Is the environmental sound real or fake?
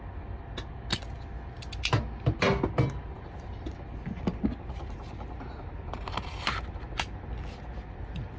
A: real